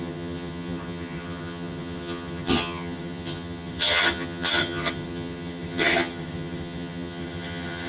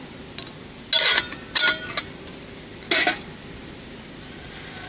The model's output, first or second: first